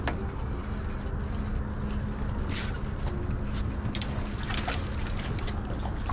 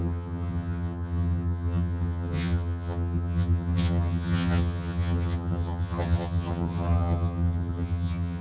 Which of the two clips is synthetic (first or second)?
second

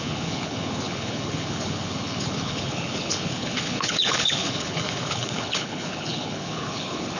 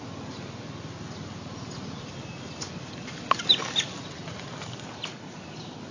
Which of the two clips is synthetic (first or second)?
first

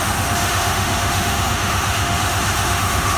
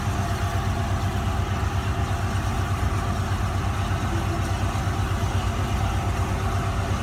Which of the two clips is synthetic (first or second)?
first